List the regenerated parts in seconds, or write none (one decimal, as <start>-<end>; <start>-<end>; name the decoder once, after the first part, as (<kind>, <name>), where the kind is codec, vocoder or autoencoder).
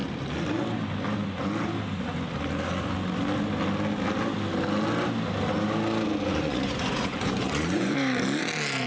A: 6.3-7.9 (vocoder, Vocos)